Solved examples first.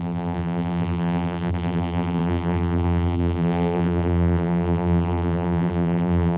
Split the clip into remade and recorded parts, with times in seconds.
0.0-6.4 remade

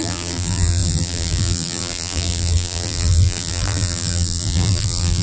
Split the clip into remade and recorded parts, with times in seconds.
0.0-5.2 remade

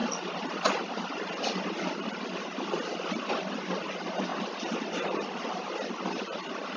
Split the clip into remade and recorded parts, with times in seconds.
0.0-6.8 recorded